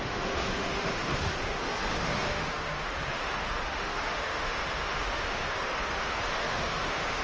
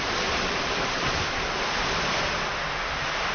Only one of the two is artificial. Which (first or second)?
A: first